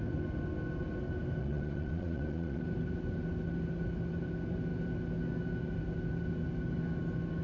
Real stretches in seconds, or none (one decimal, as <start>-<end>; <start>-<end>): 0.0-1.4; 2.6-7.4